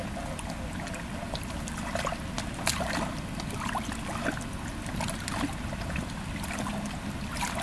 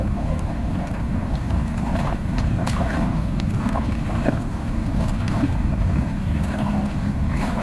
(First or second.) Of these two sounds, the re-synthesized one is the second